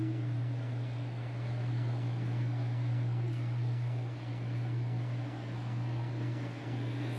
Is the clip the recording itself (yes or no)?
no